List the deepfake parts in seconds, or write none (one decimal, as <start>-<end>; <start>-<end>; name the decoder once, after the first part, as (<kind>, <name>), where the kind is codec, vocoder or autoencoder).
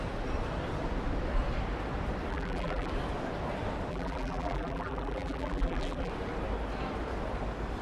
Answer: 2.3-2.9 (vocoder, BigVGAN v2); 3.9-6.1